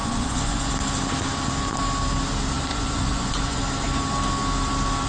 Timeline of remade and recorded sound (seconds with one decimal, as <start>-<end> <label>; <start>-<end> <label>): 0.0-0.7 remade; 0.7-2.7 recorded; 2.7-3.6 remade; 3.6-5.1 recorded